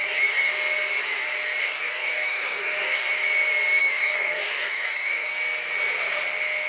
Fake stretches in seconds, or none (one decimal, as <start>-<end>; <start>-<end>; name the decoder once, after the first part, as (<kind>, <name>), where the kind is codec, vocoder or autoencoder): 0.0-0.5 (codec, DAC); 1.6-3.1; 3.8-5.3